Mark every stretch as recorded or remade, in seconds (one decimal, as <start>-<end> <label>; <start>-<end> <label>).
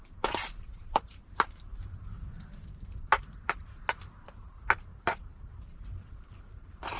0.0-7.0 remade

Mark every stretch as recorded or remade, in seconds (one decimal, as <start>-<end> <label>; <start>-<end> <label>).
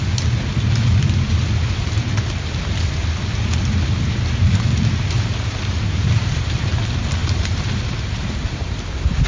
0.0-5.3 recorded; 5.3-6.7 remade; 6.7-7.2 recorded; 7.2-8.8 remade; 8.8-9.3 recorded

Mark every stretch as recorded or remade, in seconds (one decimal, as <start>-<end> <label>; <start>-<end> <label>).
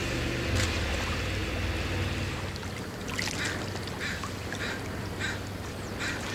0.0-0.6 remade; 0.6-6.3 recorded